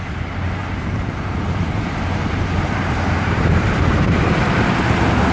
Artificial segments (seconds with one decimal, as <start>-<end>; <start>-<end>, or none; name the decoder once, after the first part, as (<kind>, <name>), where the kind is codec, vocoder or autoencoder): 0.6-3.8 (vocoder, BigVGAN v2)